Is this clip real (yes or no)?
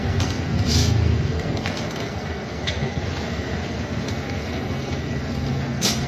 no